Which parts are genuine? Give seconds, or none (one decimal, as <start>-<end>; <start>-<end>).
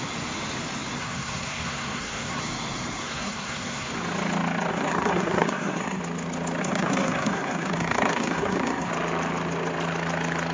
0.0-1.0; 2.4-3.0; 3.9-4.7; 6.0-6.6; 8.9-10.5